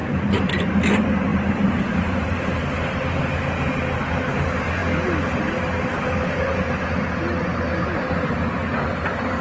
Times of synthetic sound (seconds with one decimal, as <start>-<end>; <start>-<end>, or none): none